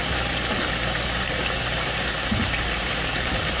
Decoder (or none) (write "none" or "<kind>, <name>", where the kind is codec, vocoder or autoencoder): vocoder, BigVGAN v2